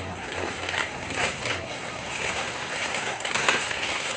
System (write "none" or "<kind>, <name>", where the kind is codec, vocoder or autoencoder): codec, SNAC